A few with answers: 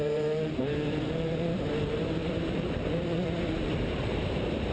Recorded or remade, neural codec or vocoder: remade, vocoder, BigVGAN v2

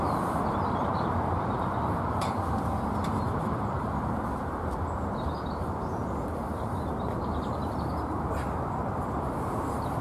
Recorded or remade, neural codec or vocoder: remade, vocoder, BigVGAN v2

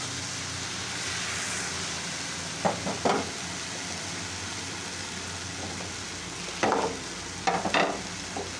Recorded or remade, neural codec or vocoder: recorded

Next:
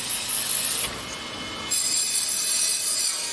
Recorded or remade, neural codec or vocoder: recorded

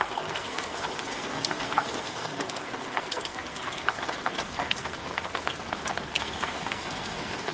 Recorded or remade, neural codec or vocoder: remade, codec, SNAC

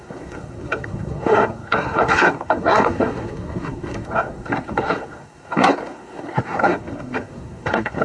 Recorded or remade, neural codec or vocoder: remade, codec, SNAC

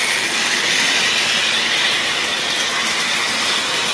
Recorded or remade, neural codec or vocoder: recorded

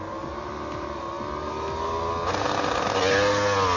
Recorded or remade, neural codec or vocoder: recorded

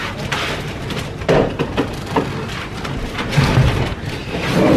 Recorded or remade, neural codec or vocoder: recorded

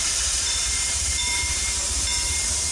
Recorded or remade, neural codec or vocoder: remade, vocoder, BigVGAN v2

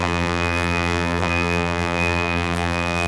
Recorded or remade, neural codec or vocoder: remade, vocoder, BigVGAN v2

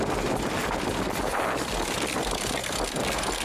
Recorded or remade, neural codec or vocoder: recorded